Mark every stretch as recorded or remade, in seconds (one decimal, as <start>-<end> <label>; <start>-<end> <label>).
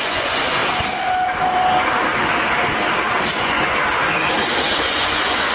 0.0-0.6 remade; 0.6-3.3 recorded; 3.3-3.8 remade; 3.8-4.7 recorded; 4.7-5.5 remade